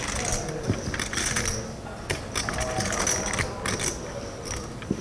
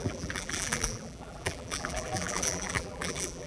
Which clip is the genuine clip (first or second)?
first